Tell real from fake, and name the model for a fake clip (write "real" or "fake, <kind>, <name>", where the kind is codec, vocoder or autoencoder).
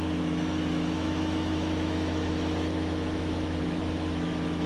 fake, autoencoder, DAC-VAE